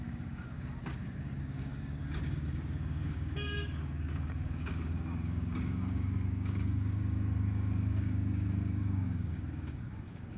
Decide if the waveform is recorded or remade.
remade